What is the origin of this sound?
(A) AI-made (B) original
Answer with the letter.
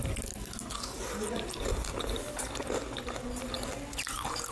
B